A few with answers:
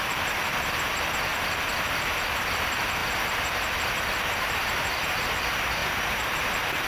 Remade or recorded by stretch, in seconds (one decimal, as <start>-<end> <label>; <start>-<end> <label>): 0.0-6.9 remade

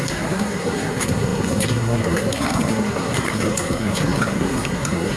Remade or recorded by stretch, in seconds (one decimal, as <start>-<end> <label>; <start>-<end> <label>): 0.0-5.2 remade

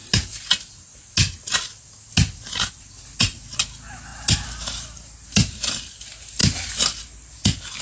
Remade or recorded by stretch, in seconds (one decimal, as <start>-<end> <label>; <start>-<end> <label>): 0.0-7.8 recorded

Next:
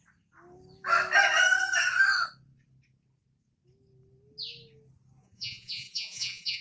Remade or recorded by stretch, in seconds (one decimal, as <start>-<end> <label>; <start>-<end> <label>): 0.0-5.2 recorded; 5.2-6.6 remade

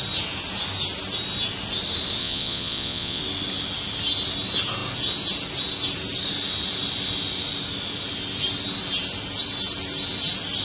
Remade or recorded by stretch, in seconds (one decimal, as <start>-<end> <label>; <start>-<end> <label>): 0.0-2.2 recorded; 2.2-3.2 remade; 3.2-10.6 recorded